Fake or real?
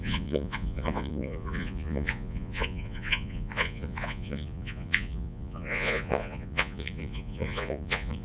fake